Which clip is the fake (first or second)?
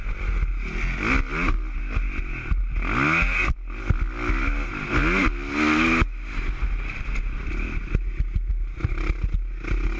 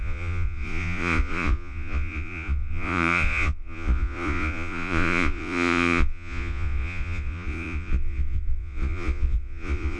second